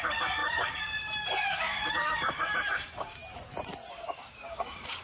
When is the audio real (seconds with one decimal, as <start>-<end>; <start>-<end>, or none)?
3.2-3.9